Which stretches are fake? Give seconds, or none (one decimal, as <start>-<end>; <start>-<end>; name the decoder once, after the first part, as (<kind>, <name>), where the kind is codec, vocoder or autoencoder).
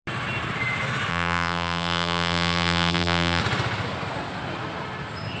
1.1-3.4 (vocoder, BigVGAN v2)